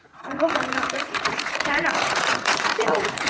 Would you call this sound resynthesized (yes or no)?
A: yes